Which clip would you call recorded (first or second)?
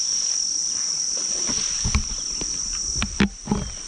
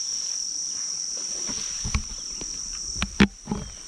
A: second